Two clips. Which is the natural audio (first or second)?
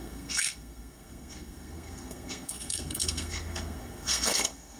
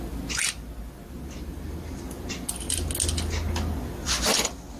second